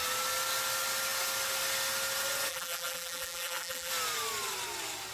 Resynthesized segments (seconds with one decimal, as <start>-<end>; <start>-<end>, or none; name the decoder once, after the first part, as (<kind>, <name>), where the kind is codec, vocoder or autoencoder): 2.5-3.9 (vocoder, BigVGAN v2)